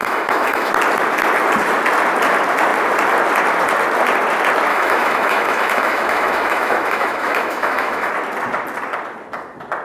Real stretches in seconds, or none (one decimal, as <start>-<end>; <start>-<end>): 0.7-4.7; 8.1-9.8